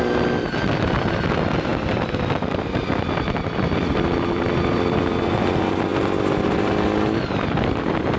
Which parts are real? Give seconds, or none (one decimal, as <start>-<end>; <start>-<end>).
0.0-8.2